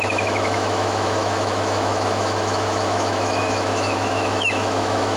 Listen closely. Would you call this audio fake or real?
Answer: fake